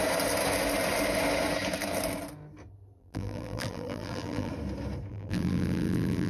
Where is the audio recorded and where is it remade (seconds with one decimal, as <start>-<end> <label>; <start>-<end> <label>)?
0.0-3.0 recorded; 3.0-4.5 remade; 4.5-5.1 recorded; 5.1-6.3 remade

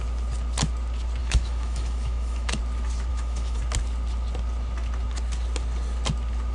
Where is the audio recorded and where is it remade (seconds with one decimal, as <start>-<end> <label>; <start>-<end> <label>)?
0.0-1.2 recorded; 1.2-2.6 remade; 2.6-3.1 recorded; 3.1-3.6 remade; 3.6-6.5 recorded

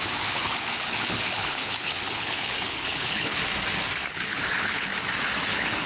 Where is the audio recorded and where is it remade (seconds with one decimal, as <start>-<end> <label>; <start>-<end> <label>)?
0.0-3.4 remade; 3.4-4.0 recorded; 4.0-4.9 remade; 4.9-5.5 recorded; 5.5-5.9 remade

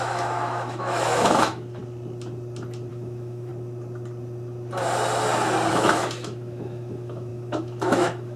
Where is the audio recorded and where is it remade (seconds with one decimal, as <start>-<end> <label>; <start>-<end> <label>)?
0.0-1.8 remade; 1.8-2.9 recorded; 2.9-3.5 remade; 3.5-5.7 recorded; 5.7-8.4 remade

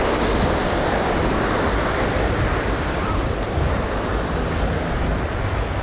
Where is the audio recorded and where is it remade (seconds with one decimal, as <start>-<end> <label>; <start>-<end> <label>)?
0.0-0.6 recorded; 0.6-4.1 remade; 4.1-5.8 recorded

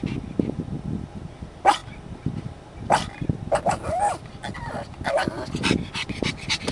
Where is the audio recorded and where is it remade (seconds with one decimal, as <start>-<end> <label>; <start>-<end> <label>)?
0.0-6.7 recorded